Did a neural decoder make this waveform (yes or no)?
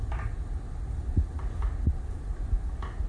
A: no